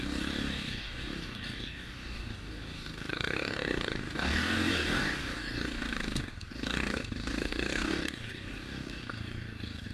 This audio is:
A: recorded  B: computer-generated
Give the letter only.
B